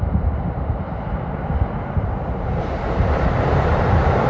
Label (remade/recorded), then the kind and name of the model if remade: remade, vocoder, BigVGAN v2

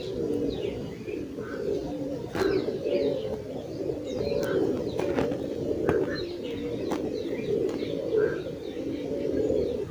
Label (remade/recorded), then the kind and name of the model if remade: recorded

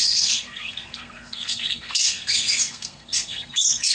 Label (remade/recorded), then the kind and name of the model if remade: remade, codec, SNAC